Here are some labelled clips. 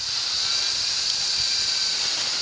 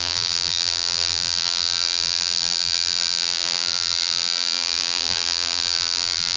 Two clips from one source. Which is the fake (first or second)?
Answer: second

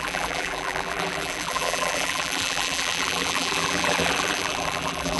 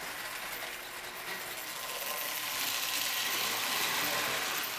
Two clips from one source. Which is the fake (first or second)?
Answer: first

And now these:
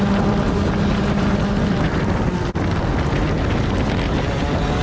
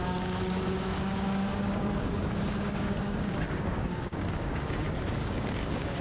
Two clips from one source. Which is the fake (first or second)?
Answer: second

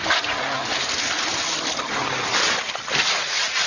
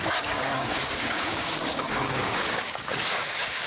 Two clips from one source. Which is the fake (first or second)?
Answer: second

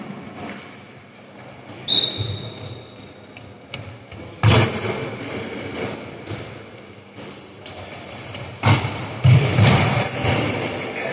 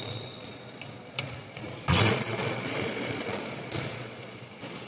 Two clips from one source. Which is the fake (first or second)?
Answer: second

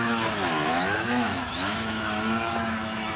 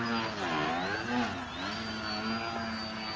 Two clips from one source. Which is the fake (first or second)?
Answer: first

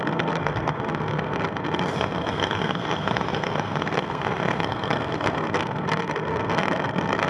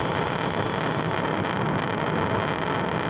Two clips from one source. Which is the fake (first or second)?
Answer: first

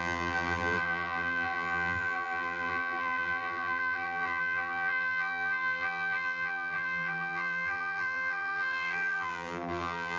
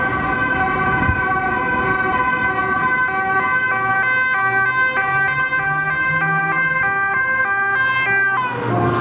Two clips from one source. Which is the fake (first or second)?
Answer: first